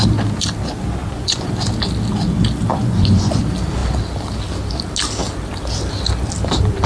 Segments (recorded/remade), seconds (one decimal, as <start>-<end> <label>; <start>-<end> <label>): 0.0-1.0 recorded; 1.0-1.5 remade; 1.5-2.7 recorded; 2.7-3.4 remade; 3.4-6.9 recorded